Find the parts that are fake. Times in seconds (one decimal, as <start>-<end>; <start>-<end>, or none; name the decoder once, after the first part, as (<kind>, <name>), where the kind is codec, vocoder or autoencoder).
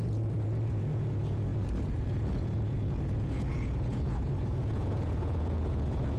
0.0-6.2 (vocoder, Vocos)